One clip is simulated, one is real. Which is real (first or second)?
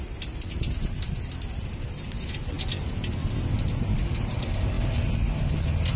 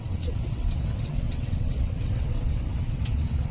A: first